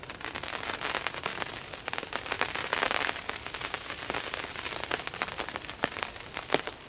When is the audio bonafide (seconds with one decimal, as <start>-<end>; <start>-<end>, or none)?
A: 0.0-6.9